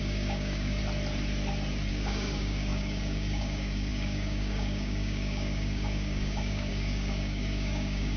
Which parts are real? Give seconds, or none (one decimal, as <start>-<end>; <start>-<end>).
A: 0.8-1.9